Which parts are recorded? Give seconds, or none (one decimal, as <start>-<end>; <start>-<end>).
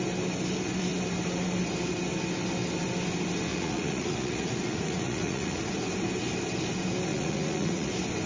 0.0-3.5; 5.6-7.1; 7.9-8.3